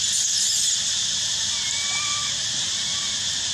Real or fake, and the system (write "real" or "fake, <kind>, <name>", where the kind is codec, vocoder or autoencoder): real